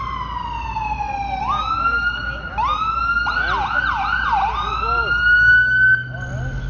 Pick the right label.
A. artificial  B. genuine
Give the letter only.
B